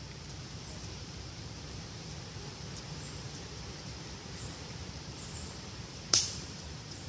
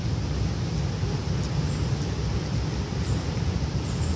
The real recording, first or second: second